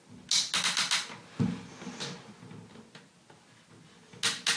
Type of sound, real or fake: real